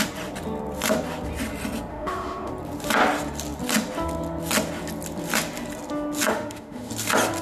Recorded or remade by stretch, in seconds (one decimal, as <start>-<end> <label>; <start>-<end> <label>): 0.0-1.9 recorded; 1.9-2.5 remade; 2.5-6.3 recorded; 6.3-6.9 remade; 6.9-7.4 recorded